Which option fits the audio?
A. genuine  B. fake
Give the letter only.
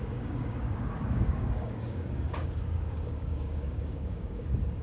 B